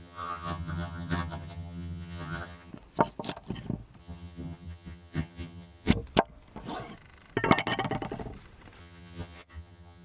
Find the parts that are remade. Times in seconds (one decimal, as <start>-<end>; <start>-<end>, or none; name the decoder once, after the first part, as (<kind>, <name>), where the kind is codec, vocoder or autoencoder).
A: 0.0-2.7 (vocoder, HiFi-GAN); 4.0-5.9; 8.8-10.0